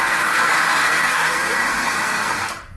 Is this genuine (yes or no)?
no